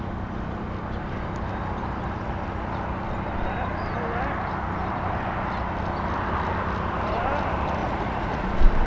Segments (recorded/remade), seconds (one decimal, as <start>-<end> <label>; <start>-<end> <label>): 0.0-7.8 recorded; 7.8-8.5 remade; 8.5-8.9 recorded